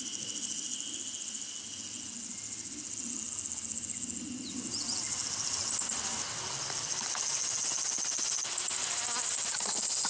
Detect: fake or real real